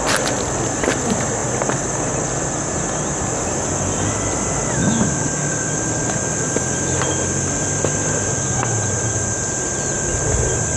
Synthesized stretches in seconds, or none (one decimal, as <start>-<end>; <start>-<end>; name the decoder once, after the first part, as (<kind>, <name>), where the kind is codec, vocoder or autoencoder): none

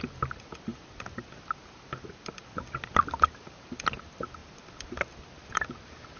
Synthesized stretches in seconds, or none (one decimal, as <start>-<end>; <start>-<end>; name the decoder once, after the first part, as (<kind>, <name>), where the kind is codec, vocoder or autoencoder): none

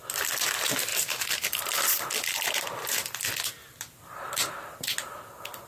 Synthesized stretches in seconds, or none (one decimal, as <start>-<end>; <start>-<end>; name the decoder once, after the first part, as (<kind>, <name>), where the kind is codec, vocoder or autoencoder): none

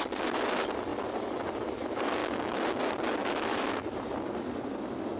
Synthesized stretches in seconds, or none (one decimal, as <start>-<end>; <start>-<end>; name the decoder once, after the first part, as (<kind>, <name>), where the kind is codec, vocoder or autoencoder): 2.2-2.8 (autoencoder, DAC-VAE); 3.2-3.8